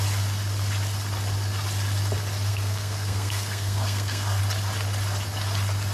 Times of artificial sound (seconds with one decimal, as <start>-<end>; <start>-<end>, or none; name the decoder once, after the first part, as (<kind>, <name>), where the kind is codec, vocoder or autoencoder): 2.5-4.4 (codec, SNAC)

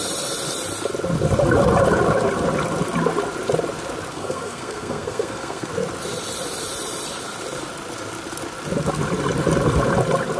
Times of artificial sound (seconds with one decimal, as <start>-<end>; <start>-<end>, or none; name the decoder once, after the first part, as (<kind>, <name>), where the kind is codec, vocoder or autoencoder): 4.1-5.7 (codec, SNAC)

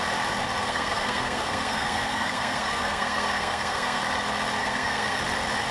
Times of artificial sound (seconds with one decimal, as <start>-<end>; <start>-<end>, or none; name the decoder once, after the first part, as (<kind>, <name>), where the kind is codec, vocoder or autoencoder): 0.6-4.0 (codec, SNAC); 4.6-5.2

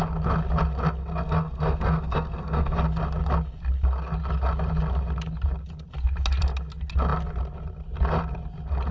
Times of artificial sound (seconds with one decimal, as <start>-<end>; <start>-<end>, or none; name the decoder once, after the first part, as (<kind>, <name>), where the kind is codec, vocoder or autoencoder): 1.0-2.8 (codec, SNAC)

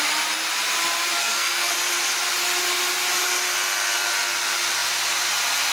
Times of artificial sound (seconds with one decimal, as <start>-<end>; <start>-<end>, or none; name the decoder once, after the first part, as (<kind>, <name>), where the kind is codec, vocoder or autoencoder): 1.2-1.7 (codec, SNAC)